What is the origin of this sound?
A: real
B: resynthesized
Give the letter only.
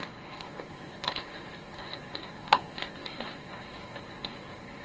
B